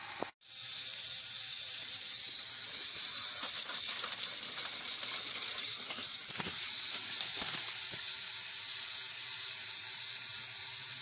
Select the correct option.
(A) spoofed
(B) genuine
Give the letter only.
A